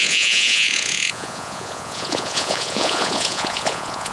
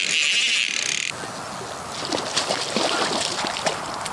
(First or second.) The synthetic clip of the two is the first